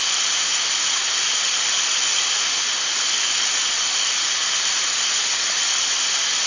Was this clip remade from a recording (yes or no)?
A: no